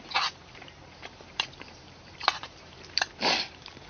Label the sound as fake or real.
fake